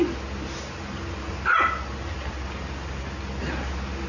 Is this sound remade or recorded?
recorded